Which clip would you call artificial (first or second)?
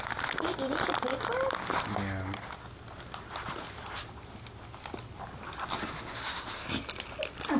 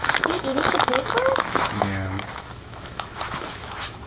second